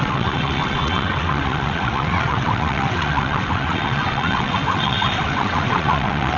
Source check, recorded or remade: remade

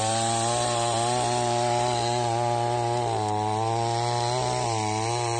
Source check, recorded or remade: recorded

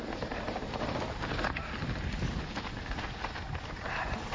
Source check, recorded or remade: recorded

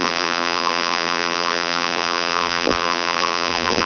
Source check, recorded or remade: remade